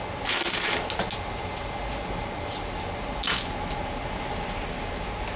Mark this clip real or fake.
real